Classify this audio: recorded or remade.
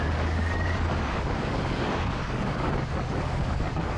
remade